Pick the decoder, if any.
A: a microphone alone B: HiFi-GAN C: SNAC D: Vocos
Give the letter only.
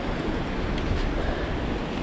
A